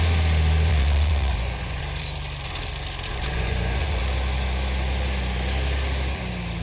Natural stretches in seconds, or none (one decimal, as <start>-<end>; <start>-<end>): 0.0-0.7; 1.8-3.1; 4.0-6.6